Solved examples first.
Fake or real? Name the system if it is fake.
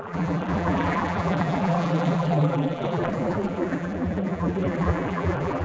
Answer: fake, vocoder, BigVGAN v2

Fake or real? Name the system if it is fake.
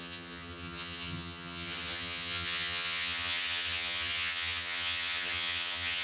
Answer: fake, vocoder, HiFi-GAN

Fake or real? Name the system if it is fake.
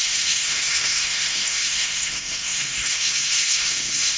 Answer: fake, codec, SNAC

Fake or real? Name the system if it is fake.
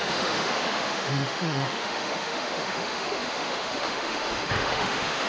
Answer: fake, autoencoder, DAC-VAE